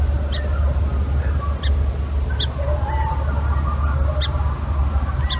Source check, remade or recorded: recorded